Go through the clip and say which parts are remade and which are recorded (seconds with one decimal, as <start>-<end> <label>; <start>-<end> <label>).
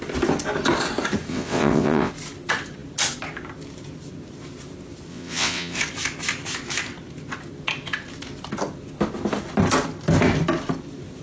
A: 0.0-1.3 recorded; 1.3-2.1 remade; 2.1-5.1 recorded; 5.1-5.8 remade; 5.8-11.2 recorded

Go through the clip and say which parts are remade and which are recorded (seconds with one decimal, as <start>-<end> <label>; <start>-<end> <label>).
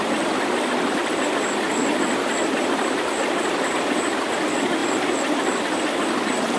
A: 0.0-6.6 recorded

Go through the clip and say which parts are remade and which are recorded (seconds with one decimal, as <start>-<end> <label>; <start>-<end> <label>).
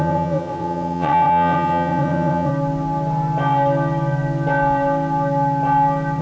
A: 0.0-2.5 remade; 2.5-6.2 recorded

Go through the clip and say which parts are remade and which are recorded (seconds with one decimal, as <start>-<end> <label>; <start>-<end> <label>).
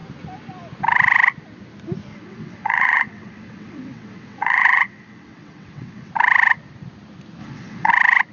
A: 0.0-2.1 recorded; 2.1-6.1 remade; 6.1-7.4 recorded; 7.4-7.9 remade; 7.9-8.3 recorded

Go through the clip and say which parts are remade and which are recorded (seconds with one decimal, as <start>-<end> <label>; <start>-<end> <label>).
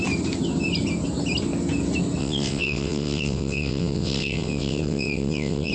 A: 0.0-2.2 recorded; 2.2-5.7 remade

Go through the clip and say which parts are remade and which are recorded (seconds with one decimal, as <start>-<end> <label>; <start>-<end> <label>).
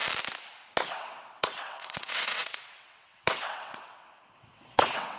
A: 0.0-0.9 recorded; 0.9-5.2 remade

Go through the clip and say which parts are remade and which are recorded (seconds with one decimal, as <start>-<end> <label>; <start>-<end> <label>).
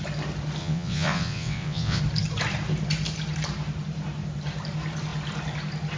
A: 0.0-0.6 recorded; 0.6-2.0 remade; 2.0-6.0 recorded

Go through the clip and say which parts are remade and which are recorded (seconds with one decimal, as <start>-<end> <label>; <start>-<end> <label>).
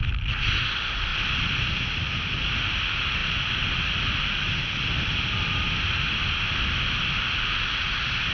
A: 0.0-8.3 recorded